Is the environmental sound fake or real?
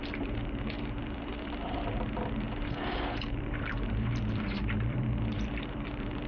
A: fake